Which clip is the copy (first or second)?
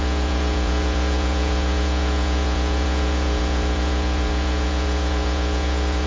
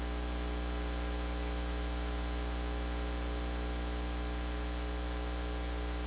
first